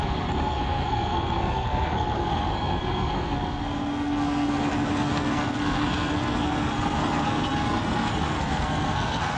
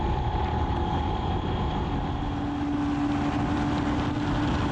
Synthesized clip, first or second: first